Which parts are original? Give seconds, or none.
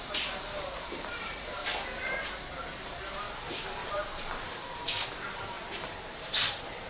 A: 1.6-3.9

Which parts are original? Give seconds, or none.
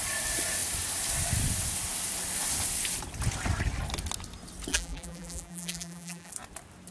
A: 0.0-4.7; 6.3-6.9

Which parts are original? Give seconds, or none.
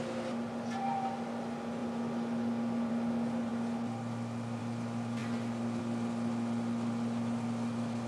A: 0.0-8.1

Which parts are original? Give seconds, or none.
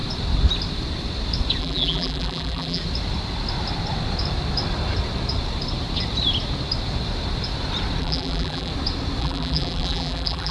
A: 0.0-1.6; 2.8-8.0; 8.7-9.2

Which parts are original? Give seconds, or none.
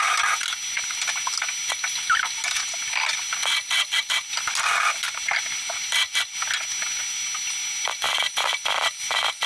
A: 0.0-9.5